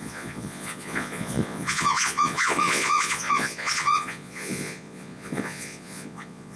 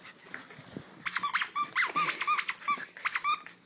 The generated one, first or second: first